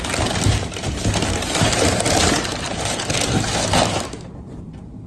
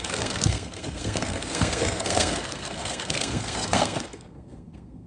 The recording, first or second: first